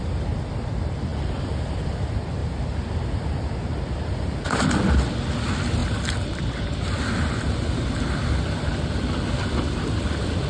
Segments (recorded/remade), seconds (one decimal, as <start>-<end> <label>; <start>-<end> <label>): 0.0-10.5 recorded